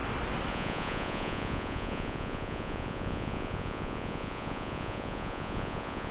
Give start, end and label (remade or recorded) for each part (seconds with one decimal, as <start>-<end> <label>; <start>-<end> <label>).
0.0-0.5 recorded; 0.5-6.1 remade